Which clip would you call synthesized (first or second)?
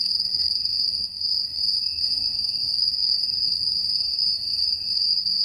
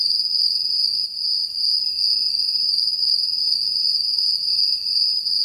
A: first